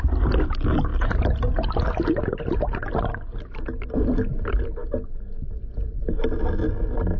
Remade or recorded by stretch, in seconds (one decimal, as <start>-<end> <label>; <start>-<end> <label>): 0.0-0.9 recorded; 0.9-1.7 remade; 1.7-7.2 recorded